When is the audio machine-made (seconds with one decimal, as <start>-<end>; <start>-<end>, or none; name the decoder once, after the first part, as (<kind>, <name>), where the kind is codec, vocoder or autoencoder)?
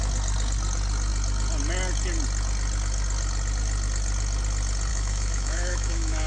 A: 4.9-6.3 (autoencoder, DAC-VAE)